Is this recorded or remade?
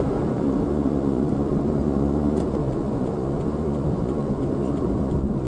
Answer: remade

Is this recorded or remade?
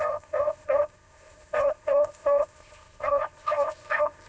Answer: remade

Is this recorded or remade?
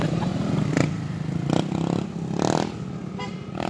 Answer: recorded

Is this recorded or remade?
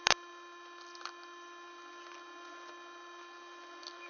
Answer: recorded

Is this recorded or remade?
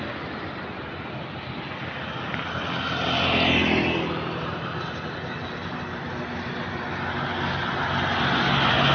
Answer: recorded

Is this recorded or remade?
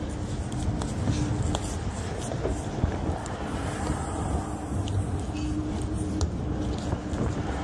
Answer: recorded